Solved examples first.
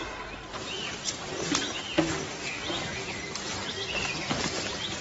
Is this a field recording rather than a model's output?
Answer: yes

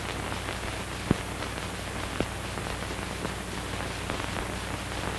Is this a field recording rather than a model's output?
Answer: yes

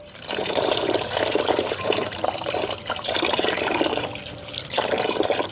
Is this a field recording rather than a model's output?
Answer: no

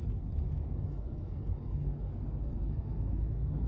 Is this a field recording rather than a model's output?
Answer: no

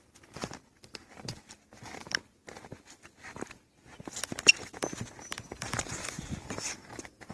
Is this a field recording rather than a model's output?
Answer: no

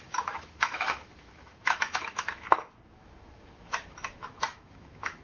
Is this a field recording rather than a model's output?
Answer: no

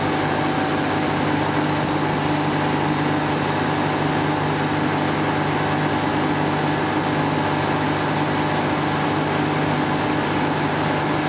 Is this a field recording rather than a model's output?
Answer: yes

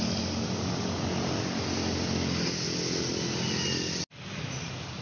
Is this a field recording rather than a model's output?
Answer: yes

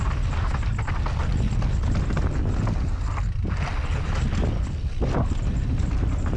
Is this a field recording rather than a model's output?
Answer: yes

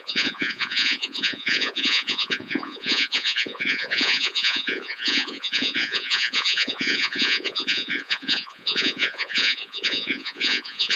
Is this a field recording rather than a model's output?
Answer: no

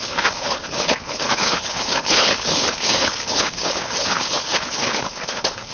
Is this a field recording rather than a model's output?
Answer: no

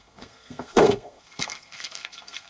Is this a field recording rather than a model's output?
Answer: no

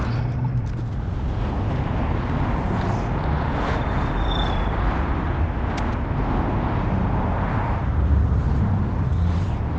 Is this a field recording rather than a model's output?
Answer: yes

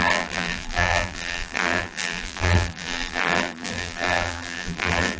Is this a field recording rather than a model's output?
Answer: no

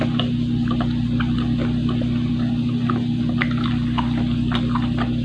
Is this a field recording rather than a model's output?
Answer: yes